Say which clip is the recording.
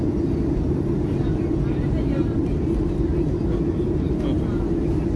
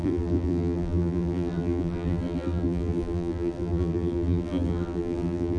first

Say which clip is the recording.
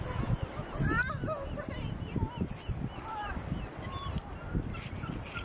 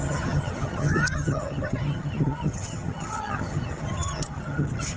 first